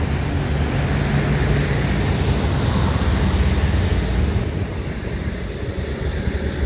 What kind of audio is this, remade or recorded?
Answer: recorded